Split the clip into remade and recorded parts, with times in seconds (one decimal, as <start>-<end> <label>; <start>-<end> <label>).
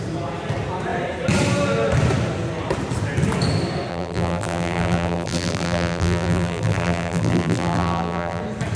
0.0-3.9 recorded; 3.9-8.4 remade; 8.4-8.8 recorded